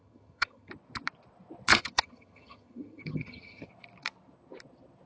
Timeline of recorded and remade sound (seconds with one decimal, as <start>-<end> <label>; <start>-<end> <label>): 0.0-0.7 remade; 0.7-1.7 recorded; 1.7-3.7 remade; 3.7-5.1 recorded